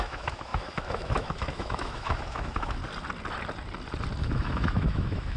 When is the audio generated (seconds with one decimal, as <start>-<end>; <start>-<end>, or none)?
0.0-2.8; 4.2-5.4